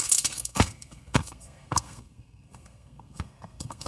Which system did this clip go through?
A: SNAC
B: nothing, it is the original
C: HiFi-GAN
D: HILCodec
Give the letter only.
A